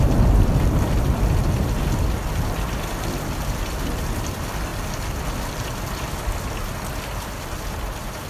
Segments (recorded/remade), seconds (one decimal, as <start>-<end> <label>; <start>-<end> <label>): 0.0-8.3 recorded